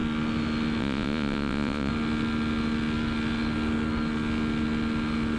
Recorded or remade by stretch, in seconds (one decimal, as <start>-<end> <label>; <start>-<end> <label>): 0.0-0.8 recorded; 0.8-1.9 remade; 1.9-5.4 recorded

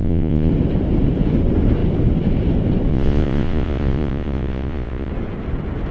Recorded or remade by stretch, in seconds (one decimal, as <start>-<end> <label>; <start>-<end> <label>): 0.0-0.5 remade; 0.5-2.9 recorded; 2.9-5.1 remade; 5.1-5.9 recorded

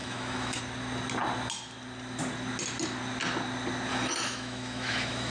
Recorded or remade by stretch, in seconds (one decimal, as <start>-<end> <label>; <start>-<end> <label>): 0.0-0.6 remade; 0.6-3.9 recorded; 3.9-5.3 remade

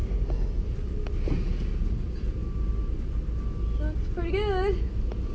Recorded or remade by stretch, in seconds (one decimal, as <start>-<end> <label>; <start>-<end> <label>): 0.0-5.3 recorded

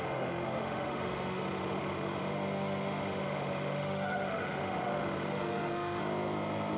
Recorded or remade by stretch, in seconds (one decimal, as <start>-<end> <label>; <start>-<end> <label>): 0.0-6.0 remade; 6.0-6.8 recorded